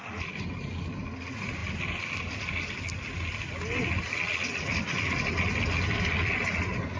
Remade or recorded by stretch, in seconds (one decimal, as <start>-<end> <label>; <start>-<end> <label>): 0.0-7.0 recorded